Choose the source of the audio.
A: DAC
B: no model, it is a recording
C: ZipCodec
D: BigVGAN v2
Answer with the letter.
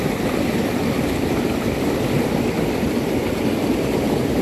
D